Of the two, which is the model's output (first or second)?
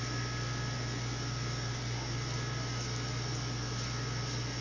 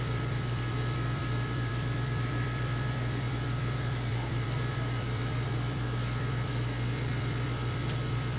second